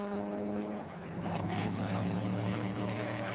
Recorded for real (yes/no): no